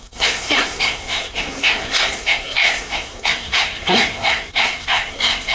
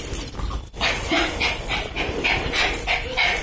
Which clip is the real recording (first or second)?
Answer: second